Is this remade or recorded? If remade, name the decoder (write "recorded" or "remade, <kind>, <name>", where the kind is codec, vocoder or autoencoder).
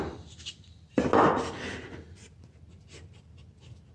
recorded